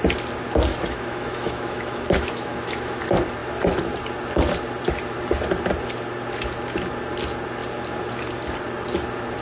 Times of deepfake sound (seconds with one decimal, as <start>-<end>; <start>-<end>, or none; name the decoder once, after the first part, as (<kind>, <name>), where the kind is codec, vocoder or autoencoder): 0.7-3.0 (autoencoder, DAC-VAE)